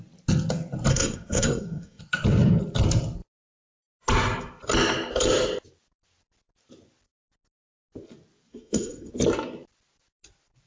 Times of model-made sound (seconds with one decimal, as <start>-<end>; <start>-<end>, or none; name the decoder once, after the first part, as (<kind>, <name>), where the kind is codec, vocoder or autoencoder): 0.9-2.0 (codec, SNAC); 8.5-9.1